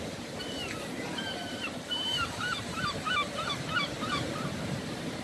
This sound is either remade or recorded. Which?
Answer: remade